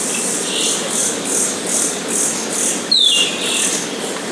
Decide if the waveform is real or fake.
real